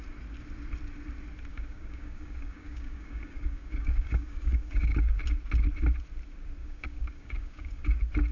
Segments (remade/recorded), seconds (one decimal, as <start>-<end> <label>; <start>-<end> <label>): 0.0-1.5 recorded; 1.5-5.2 remade; 5.2-6.6 recorded; 6.6-7.8 remade; 7.8-8.3 recorded